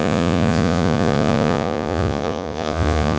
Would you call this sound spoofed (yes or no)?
yes